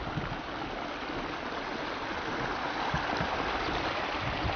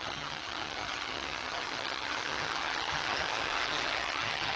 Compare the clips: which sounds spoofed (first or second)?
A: second